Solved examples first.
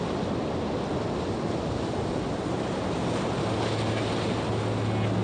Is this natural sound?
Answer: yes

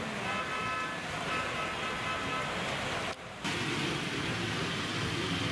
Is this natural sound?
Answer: yes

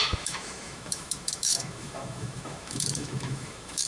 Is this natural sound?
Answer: no